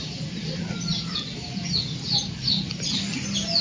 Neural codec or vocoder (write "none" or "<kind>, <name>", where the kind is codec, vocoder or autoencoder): none